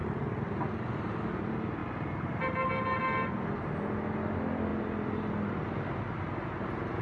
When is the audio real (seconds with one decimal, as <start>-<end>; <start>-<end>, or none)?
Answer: 0.0-7.0